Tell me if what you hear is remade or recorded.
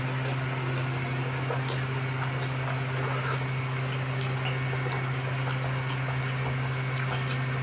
recorded